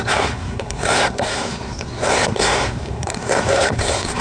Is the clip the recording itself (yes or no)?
no